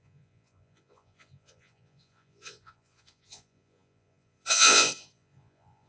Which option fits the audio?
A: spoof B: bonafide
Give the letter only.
A